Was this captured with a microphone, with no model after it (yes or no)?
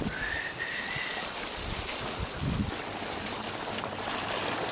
yes